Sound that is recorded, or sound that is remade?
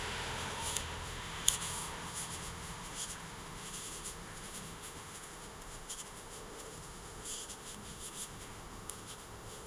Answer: remade